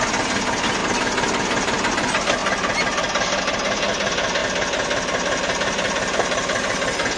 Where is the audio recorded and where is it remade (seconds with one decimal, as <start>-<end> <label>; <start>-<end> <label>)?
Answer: 0.0-7.2 recorded